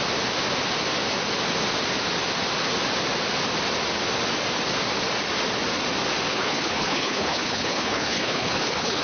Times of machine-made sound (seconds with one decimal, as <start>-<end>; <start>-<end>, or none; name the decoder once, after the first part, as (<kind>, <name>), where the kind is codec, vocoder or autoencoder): 6.3-9.0 (codec, HILCodec)